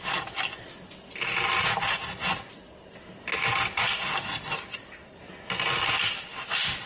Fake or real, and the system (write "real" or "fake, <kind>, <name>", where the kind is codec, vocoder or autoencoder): real